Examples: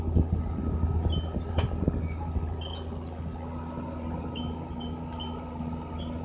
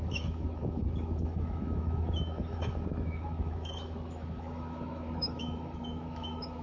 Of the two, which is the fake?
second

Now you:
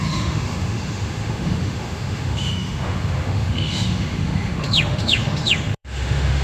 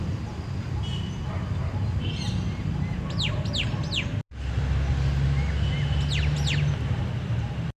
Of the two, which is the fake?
first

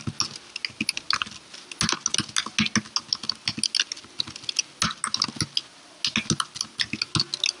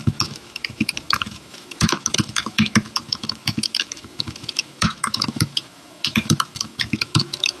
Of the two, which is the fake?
second